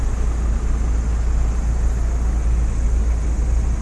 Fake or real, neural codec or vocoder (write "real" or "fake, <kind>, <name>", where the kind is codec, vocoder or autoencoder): real